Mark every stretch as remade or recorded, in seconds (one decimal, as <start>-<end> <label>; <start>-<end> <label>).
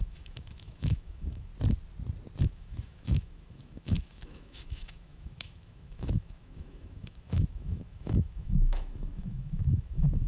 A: 0.0-1.5 remade; 1.5-2.4 recorded; 2.4-10.3 remade